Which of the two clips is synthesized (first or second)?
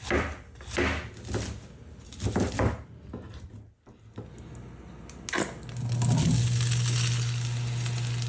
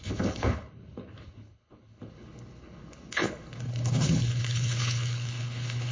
second